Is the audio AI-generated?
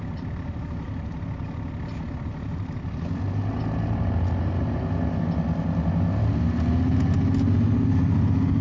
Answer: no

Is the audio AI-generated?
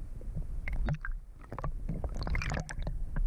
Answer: no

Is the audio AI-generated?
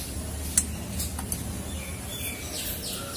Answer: no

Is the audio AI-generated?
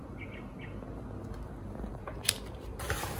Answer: no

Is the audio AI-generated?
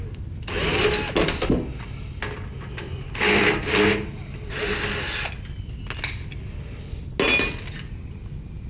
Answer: no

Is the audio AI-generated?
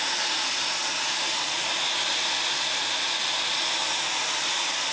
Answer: no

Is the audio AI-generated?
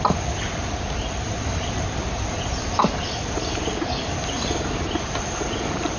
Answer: yes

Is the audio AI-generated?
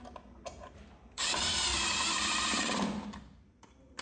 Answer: yes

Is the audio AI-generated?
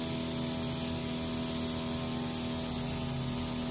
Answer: no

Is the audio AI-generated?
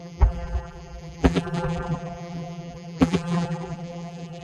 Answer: yes